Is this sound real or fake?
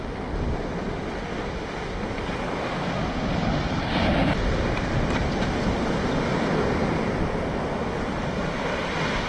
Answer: real